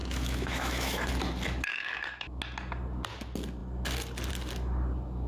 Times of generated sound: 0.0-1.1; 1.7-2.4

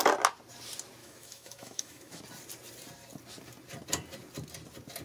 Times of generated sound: 1.0-2.2

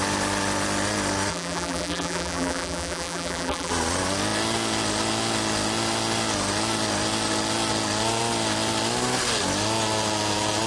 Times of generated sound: 1.3-3.7

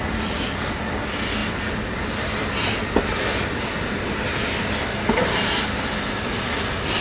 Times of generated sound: none

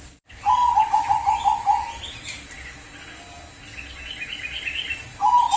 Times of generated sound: none